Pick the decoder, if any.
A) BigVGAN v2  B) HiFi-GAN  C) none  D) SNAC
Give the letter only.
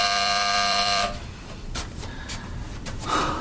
A